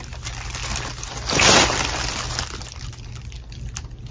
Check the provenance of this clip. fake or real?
real